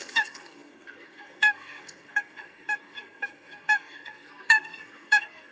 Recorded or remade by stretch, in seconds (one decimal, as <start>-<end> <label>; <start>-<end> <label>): 0.0-5.5 remade